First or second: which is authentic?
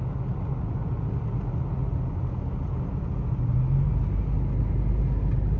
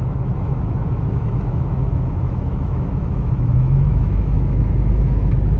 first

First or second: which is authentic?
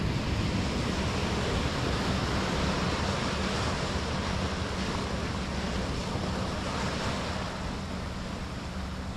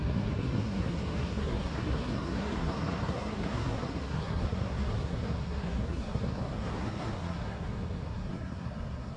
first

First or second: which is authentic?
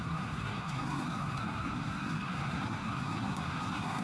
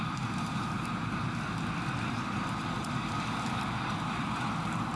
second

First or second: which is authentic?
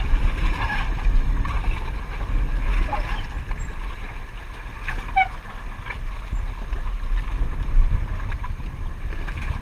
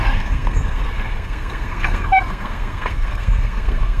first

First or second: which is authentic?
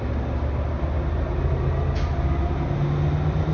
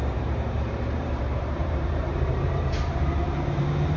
first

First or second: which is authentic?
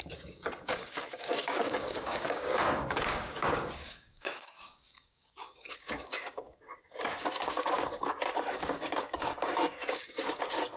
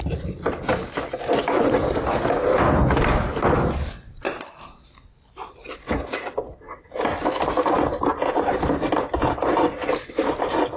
second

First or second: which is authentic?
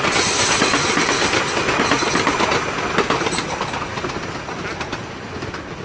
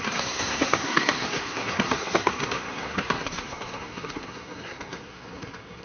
first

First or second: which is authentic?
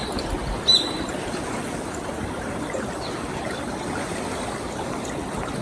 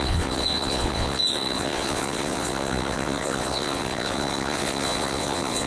first